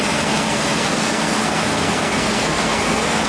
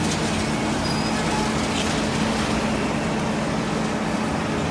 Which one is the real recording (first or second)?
second